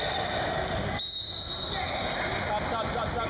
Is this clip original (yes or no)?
yes